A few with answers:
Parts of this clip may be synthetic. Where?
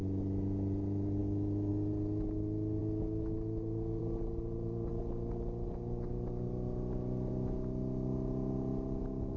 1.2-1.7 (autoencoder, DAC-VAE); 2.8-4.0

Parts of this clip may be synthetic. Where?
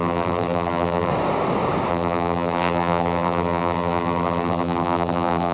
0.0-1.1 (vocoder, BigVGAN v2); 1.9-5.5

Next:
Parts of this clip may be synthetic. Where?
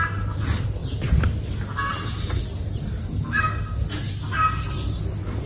3.0-3.5 (codec, SNAC)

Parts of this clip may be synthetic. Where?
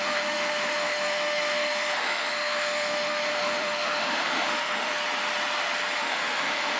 0.0-4.9 (autoencoder, DAC-VAE); 6.0-6.8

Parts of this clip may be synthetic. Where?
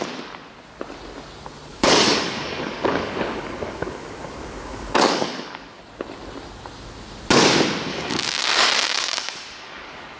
1.7-5.8 (codec, DAC); 7.9-10.2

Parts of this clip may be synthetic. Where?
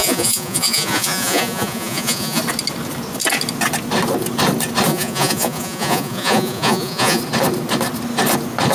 0.0-2.4 (vocoder, Vocos); 4.9-7.2